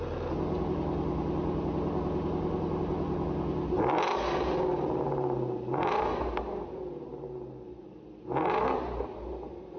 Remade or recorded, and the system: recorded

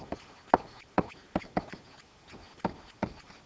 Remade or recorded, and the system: recorded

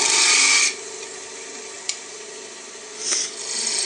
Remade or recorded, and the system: recorded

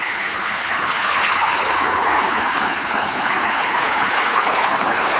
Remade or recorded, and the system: remade, codec, HILCodec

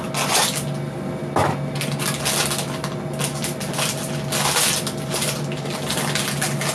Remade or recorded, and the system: recorded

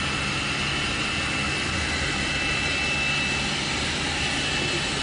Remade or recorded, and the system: recorded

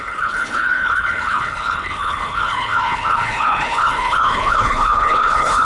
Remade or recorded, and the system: remade, codec, HILCodec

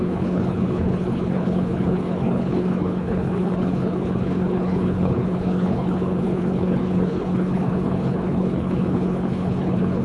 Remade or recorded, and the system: remade, codec, HILCodec